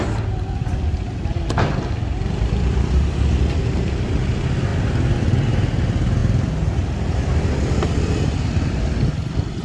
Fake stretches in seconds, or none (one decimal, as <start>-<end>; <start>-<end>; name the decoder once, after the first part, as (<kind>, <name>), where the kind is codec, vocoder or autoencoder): none